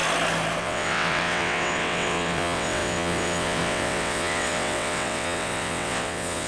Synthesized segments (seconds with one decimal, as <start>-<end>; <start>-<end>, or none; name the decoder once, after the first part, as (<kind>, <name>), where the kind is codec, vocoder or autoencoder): 0.6-6.5 (vocoder, WaveNeXt)

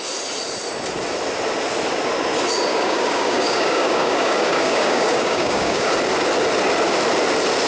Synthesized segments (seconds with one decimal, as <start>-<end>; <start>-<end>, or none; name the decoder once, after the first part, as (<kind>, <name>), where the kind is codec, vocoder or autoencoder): 2.7-5.9 (codec, DAC)

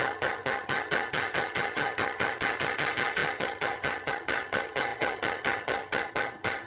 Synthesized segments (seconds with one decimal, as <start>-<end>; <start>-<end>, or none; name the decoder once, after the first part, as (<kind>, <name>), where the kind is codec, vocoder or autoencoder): 0.0-6.7 (vocoder, HiFi-GAN)

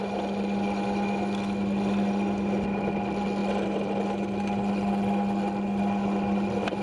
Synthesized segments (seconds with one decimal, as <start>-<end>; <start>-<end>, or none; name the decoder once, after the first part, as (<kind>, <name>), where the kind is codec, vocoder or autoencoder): none

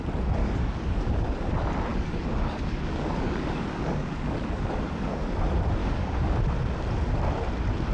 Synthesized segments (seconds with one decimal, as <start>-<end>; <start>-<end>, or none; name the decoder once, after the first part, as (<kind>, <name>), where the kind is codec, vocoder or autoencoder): 0.4-1.5 (codec, DAC); 1.9-5.3; 5.8-6.4

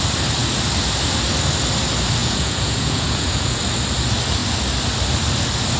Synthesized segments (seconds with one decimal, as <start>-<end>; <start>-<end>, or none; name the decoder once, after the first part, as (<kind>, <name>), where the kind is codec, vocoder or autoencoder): 2.2-3.6 (vocoder, Vocos)

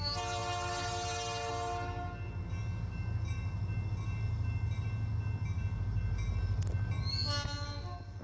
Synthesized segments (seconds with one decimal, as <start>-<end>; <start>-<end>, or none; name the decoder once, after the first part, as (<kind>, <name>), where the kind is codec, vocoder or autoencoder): none

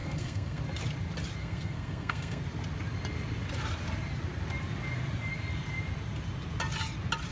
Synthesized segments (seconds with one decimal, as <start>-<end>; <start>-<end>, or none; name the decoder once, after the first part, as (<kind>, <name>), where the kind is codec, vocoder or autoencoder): 0.0-0.6 (codec, SNAC); 1.4-2.4